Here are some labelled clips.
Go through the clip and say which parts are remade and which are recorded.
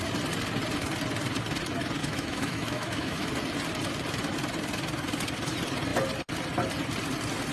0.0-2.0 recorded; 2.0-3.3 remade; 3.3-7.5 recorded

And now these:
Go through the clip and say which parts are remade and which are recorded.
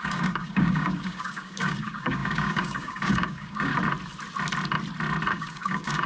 0.0-3.7 remade; 3.7-5.3 recorded; 5.3-6.1 remade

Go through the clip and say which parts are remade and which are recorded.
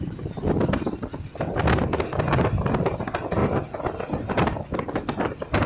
0.0-5.7 recorded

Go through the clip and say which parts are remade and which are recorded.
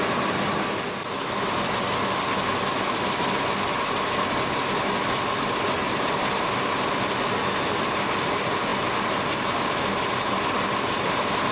0.0-11.5 recorded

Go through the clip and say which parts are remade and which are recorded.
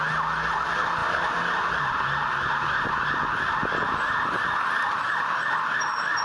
0.0-6.2 recorded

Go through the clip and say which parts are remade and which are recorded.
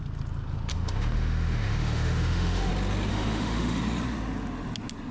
0.0-0.7 recorded; 0.7-2.7 remade; 2.7-3.1 recorded; 3.1-3.8 remade; 3.8-5.1 recorded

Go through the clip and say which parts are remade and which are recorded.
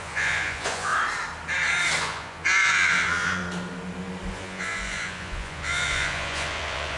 0.0-0.9 remade; 0.9-2.0 recorded; 2.0-3.4 remade; 3.4-4.3 recorded; 4.3-7.0 remade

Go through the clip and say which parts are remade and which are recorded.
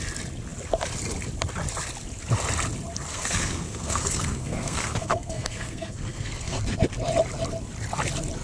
0.0-3.1 recorded; 3.1-6.6 remade; 6.6-8.4 recorded